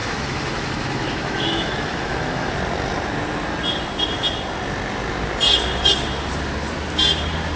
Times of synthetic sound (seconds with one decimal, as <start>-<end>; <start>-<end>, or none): 0.0-2.5